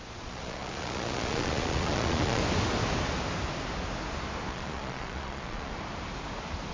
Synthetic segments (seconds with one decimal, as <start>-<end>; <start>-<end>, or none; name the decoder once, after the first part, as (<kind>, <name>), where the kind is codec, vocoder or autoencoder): 0.0-2.4 (vocoder, Vocos); 4.5-5.7